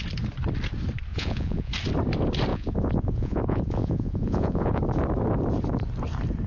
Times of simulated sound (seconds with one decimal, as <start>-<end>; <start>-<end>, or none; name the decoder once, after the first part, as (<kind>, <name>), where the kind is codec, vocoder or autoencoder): 1.1-1.7 (vocoder, Vocos); 2.5-4.8